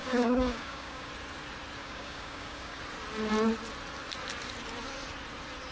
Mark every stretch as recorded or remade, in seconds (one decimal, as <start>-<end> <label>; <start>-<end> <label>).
0.0-1.1 remade; 1.1-1.8 recorded; 1.8-2.8 remade; 2.8-5.7 recorded